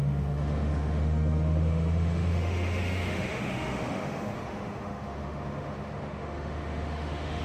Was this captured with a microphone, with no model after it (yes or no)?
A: no